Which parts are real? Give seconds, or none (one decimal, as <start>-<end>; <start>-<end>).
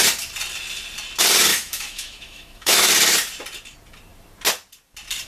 0.0-1.5; 2.9-5.3